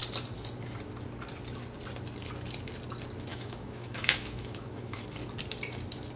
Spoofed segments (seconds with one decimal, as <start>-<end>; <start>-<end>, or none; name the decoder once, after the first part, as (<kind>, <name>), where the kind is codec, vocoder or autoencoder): 3.3-5.0 (autoencoder, DAC-VAE)